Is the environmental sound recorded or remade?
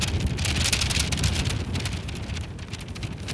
recorded